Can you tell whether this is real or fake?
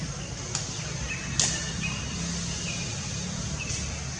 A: real